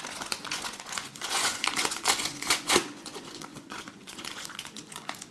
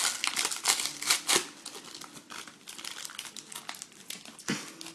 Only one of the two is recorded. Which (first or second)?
second